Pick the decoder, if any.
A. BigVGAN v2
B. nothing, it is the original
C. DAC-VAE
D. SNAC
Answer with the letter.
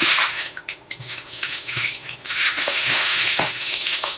C